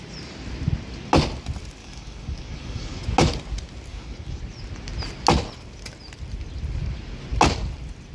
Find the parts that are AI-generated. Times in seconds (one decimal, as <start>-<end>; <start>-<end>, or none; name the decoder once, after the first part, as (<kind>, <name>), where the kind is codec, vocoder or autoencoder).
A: 1.8-3.0 (codec, DAC); 3.9-4.4